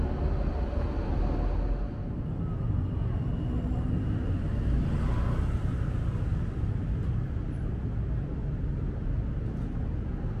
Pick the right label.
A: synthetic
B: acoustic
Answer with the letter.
B